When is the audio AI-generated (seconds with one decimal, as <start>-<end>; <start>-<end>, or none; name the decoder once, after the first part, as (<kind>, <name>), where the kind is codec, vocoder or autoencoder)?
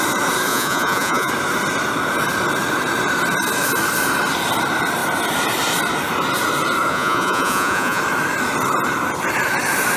0.5-1.3 (vocoder, Vocos); 6.9-8.0